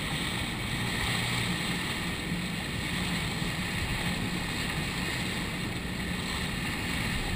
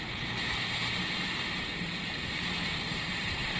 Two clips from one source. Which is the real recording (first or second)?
first